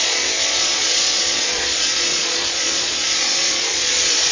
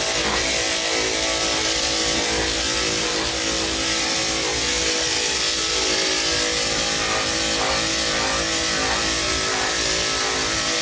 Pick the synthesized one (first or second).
first